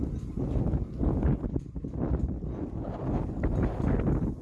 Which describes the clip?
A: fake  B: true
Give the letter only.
B